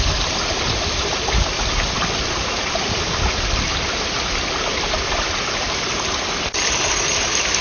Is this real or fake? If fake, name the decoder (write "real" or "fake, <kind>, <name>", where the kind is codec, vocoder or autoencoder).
real